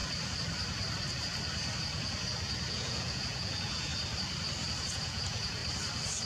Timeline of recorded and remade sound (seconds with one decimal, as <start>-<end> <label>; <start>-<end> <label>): 0.0-2.7 recorded; 2.7-3.9 remade; 3.9-4.8 recorded; 4.8-5.6 remade; 5.6-6.3 recorded